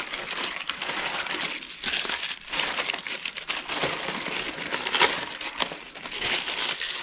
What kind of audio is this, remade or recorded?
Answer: recorded